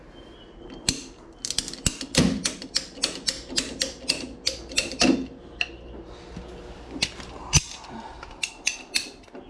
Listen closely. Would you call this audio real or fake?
real